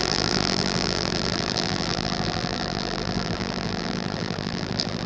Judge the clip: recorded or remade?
remade